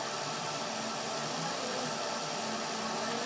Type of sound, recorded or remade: recorded